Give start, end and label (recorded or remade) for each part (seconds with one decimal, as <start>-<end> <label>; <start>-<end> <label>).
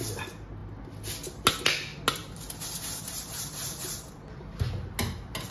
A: 0.0-2.2 recorded; 2.2-4.1 remade; 4.1-5.5 recorded